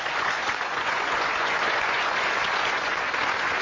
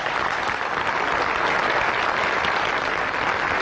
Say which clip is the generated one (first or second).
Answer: first